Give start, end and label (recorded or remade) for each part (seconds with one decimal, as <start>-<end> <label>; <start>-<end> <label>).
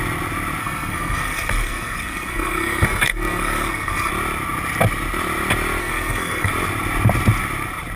0.0-0.6 recorded; 0.6-4.1 remade; 4.1-5.8 recorded; 5.8-6.5 remade; 6.5-8.0 recorded